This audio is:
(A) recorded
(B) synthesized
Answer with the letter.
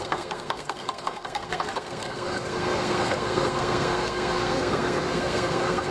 B